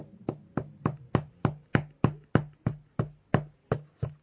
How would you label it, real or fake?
real